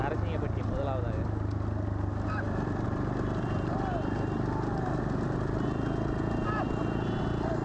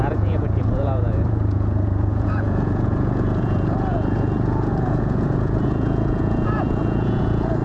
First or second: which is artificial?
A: second